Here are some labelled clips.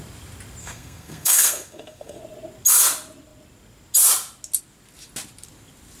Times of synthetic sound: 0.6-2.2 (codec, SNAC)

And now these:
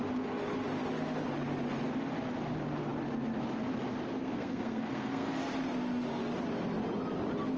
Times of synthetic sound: 4.2-5.4 (codec, SNAC)

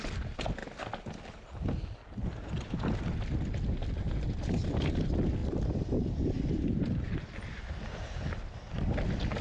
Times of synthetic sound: none

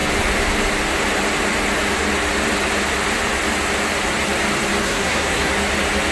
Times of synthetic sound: 4.8-5.5 (codec, SNAC)